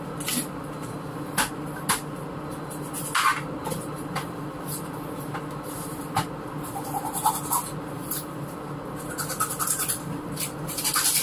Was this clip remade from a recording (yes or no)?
no